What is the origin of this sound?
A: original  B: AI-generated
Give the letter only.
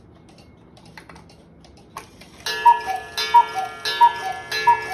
A